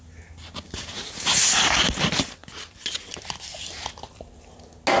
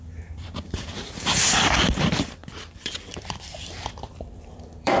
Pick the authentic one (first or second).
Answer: first